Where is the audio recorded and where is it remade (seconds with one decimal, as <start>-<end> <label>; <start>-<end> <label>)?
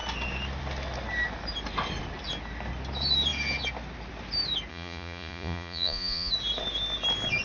0.0-4.7 recorded; 4.7-6.3 remade; 6.3-7.4 recorded